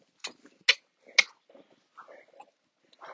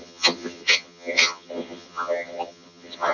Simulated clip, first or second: second